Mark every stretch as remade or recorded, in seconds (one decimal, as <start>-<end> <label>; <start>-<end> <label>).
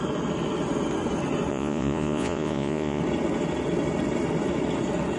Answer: 0.0-1.5 recorded; 1.5-3.0 remade; 3.0-5.2 recorded